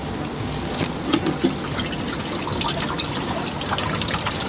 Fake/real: real